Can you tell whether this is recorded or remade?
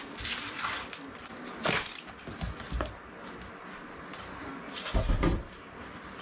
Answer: recorded